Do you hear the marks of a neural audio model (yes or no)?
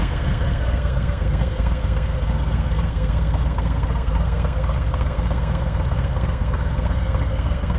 yes